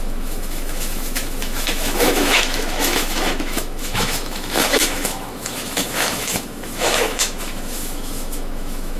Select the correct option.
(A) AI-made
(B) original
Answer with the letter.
A